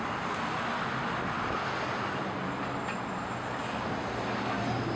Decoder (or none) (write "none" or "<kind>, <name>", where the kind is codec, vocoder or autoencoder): none